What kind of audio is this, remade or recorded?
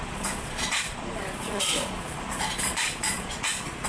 remade